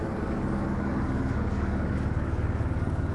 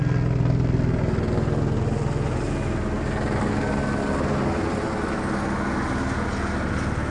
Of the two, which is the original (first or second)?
second